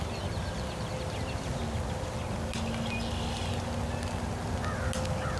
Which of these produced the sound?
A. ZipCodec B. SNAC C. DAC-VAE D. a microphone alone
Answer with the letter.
D